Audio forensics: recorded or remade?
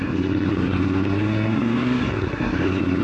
remade